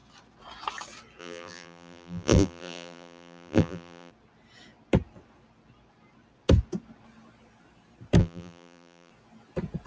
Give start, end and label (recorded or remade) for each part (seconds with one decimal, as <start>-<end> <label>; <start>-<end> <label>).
0.0-1.2 recorded; 1.2-4.1 remade; 4.1-8.2 recorded; 8.2-9.1 remade; 9.1-9.9 recorded